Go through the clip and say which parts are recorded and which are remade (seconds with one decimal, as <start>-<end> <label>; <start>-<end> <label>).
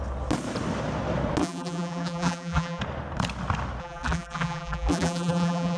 0.0-1.4 recorded; 1.4-2.8 remade; 2.8-3.8 recorded; 3.8-5.8 remade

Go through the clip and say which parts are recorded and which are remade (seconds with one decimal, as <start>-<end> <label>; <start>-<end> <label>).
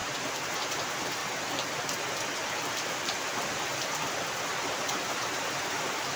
0.0-1.2 remade; 1.2-4.9 recorded; 4.9-6.2 remade